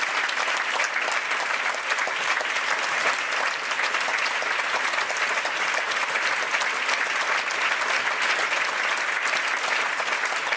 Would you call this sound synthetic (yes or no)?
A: no